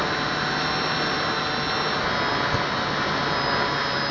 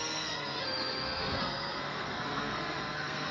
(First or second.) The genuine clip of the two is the first